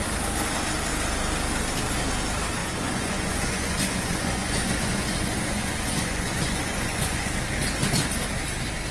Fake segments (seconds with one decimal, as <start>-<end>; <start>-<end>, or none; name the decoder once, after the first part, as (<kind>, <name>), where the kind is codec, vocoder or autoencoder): 2.6-7.3 (vocoder, Vocos)